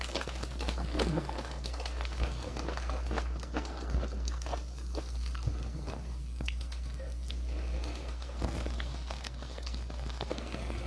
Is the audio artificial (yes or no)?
yes